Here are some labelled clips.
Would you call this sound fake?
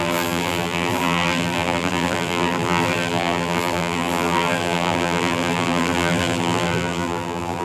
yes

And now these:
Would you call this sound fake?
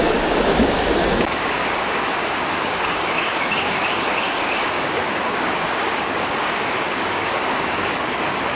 yes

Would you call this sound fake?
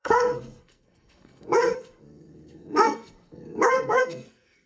yes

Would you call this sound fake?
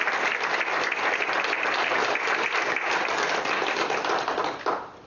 no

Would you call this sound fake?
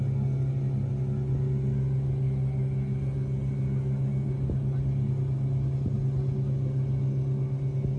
no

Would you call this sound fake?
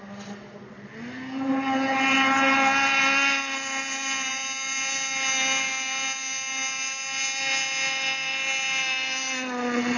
no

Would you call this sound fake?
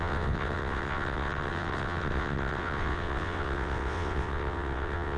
yes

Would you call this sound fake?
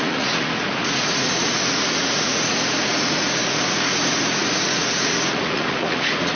yes